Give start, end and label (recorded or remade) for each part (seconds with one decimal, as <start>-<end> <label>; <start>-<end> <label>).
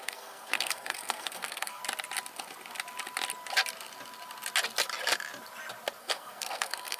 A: 0.0-1.8 remade; 1.8-6.0 recorded; 6.0-7.0 remade